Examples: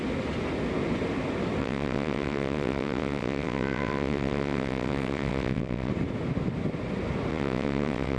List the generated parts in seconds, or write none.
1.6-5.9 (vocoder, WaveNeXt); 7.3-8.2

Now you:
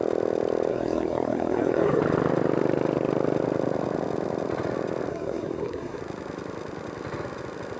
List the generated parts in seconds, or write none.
0.7-2.0 (codec, SNAC); 5.1-6.0

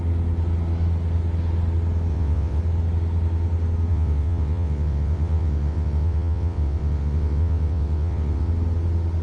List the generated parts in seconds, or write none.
2.1-2.6 (vocoder, WaveNeXt); 3.9-8.5

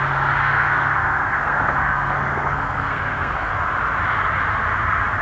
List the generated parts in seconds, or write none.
0.4-3.5 (codec, SNAC)